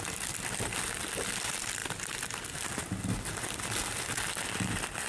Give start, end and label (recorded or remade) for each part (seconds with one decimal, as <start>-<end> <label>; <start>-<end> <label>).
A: 0.0-5.1 recorded